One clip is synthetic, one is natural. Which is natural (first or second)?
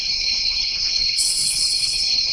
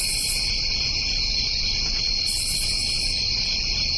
second